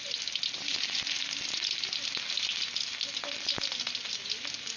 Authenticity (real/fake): real